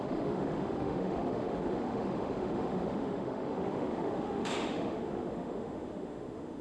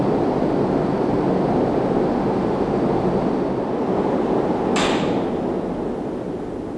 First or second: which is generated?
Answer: first